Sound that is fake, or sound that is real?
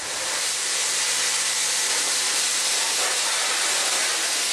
real